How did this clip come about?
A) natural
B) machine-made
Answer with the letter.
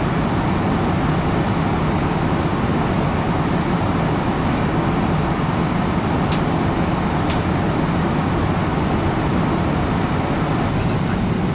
A